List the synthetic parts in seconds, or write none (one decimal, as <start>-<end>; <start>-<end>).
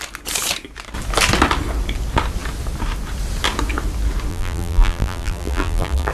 4.3-6.1